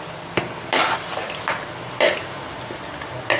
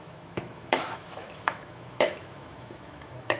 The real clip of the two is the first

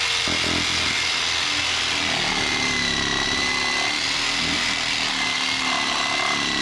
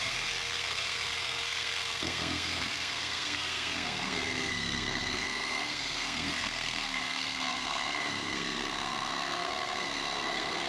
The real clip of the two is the first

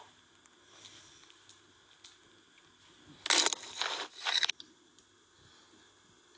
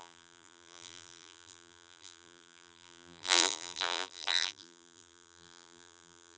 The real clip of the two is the first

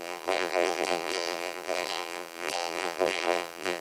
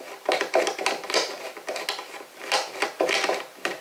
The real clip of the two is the second